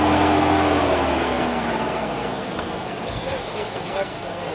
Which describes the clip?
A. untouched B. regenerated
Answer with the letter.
B